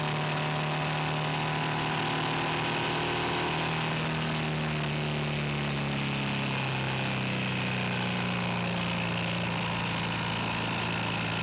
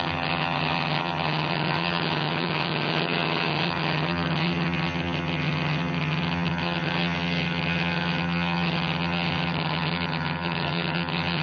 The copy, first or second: second